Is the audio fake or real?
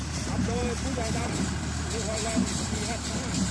fake